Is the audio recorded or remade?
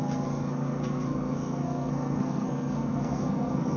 remade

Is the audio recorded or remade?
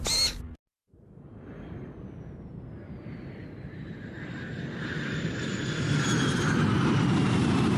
recorded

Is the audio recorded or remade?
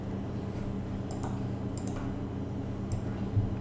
recorded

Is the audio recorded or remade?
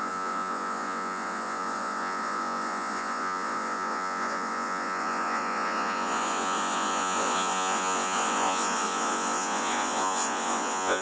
remade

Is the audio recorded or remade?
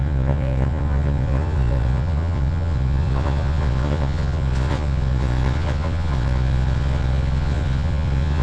remade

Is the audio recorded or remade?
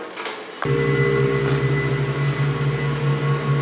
recorded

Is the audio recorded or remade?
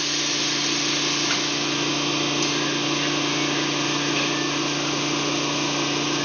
recorded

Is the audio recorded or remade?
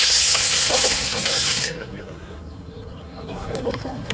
remade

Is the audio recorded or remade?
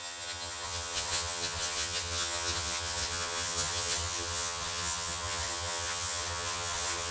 remade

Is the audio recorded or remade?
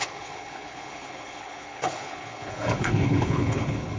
remade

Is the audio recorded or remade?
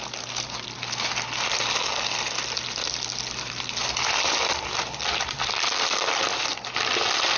recorded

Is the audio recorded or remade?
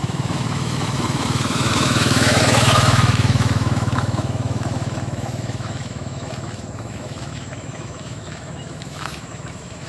remade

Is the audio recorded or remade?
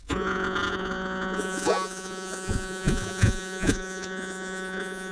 remade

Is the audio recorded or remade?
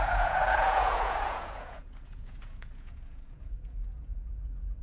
remade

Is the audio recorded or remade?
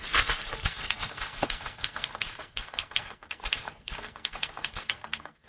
remade